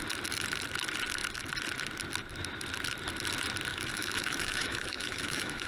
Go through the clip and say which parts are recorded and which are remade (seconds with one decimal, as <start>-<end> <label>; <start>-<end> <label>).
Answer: 0.0-3.7 recorded; 3.7-5.7 remade